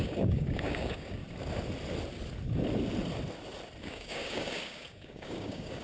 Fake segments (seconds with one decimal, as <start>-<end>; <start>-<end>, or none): 0.0-1.2; 3.8-5.8